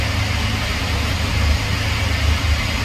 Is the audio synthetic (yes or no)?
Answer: no